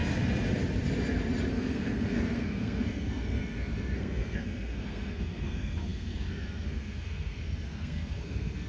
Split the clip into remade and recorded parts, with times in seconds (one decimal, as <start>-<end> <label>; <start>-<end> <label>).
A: 0.0-1.5 recorded; 1.5-8.7 remade